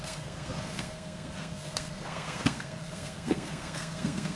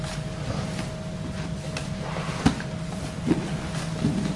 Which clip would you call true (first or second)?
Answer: second